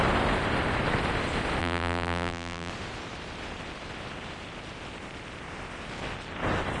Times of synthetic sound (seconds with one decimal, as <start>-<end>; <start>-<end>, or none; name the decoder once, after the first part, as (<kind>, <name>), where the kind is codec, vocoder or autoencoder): 1.6-2.7 (vocoder, BigVGAN v2)